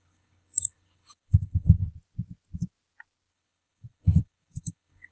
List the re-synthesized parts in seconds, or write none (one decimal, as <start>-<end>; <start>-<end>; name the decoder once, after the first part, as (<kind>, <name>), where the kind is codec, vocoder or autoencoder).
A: 0.0-1.8 (codec, DAC); 3.3-5.1